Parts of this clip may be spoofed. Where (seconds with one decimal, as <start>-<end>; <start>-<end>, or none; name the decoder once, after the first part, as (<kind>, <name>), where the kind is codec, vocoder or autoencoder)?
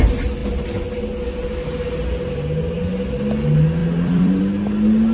3.8-4.4 (vocoder, BigVGAN v2)